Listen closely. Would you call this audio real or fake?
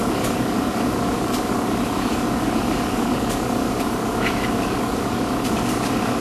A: fake